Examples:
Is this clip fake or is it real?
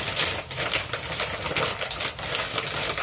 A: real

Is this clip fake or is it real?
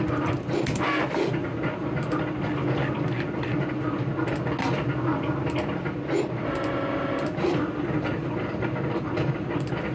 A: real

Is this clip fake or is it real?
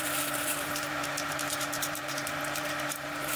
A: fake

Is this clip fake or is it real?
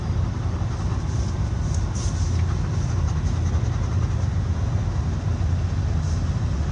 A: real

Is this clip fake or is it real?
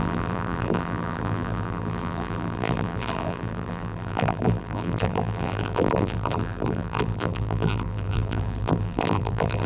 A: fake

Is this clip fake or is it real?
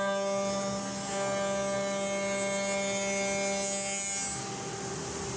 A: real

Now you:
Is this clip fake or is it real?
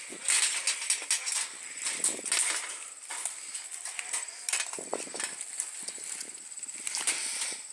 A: real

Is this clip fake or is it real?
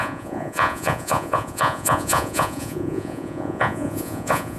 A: fake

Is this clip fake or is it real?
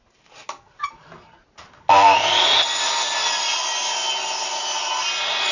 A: real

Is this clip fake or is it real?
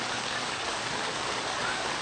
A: fake